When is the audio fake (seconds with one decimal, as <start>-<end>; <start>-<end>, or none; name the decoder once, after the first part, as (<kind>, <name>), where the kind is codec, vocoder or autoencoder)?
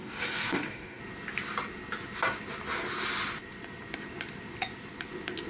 0.0-1.0 (codec, DAC)